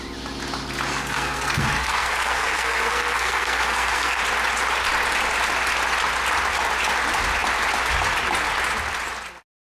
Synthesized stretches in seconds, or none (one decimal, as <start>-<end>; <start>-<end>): 0.9-4.2